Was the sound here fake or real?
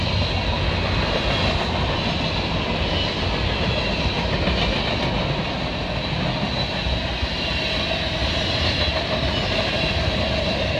real